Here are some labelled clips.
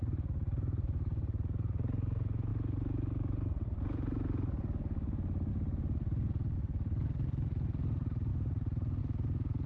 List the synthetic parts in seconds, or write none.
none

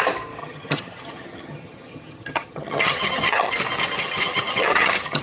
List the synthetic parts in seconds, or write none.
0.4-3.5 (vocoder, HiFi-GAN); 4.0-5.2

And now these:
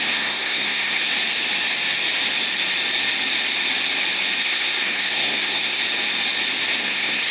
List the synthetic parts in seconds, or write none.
0.0-1.1 (codec, SNAC); 4.4-5.8; 6.8-7.3